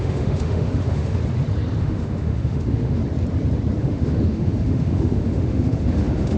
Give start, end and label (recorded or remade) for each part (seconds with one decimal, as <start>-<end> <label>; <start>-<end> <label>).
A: 0.0-1.2 remade; 1.2-1.8 recorded; 1.8-3.0 remade; 3.0-3.8 recorded; 3.8-6.4 remade

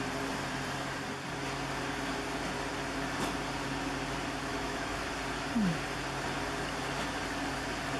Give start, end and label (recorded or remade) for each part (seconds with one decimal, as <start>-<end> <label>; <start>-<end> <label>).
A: 0.0-4.5 recorded; 4.5-5.1 remade; 5.1-8.0 recorded

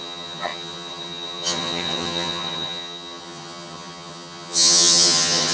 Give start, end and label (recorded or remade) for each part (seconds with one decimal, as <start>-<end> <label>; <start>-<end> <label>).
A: 0.0-5.5 remade

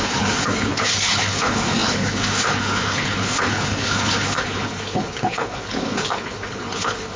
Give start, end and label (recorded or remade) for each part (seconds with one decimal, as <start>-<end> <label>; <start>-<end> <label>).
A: 0.0-7.2 remade

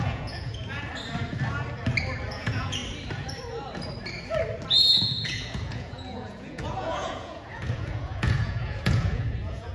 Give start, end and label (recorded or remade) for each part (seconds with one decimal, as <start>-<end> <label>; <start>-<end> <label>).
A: 0.0-0.9 remade; 0.9-2.3 recorded; 2.3-2.8 remade; 2.8-5.0 recorded; 5.0-9.7 remade

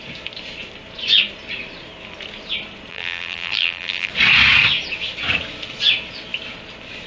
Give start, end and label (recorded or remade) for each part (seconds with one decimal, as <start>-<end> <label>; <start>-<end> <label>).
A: 0.0-2.9 recorded; 2.9-4.1 remade; 4.1-7.1 recorded

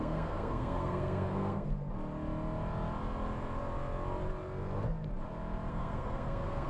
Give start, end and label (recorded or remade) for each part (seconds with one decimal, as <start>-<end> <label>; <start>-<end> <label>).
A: 0.0-1.7 remade; 1.7-5.7 recorded; 5.7-6.7 remade